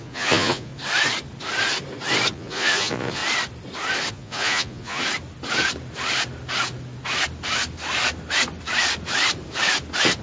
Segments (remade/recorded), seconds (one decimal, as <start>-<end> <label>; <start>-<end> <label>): 0.0-0.7 remade; 0.7-2.3 recorded; 2.3-3.2 remade; 3.2-4.1 recorded; 4.1-5.0 remade; 5.0-10.2 recorded

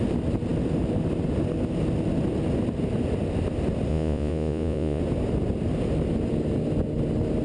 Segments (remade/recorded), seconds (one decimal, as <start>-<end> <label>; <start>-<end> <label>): 0.0-3.9 recorded; 3.9-5.0 remade; 5.0-7.4 recorded

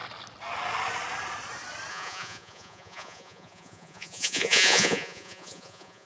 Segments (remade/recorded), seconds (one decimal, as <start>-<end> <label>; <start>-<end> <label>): 0.0-1.9 recorded; 1.9-6.1 remade

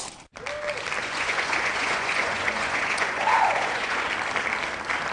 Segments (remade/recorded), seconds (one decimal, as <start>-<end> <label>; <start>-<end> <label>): 0.0-1.0 recorded; 1.0-4.1 remade; 4.1-5.1 recorded